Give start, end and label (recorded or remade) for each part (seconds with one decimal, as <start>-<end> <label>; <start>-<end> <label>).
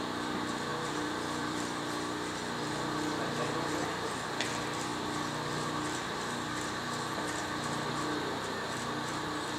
0.0-0.7 recorded; 0.7-1.8 remade; 1.8-9.6 recorded